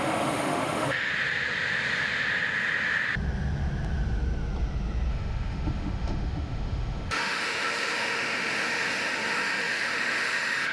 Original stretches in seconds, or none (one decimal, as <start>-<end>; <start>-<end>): 1.1-5.1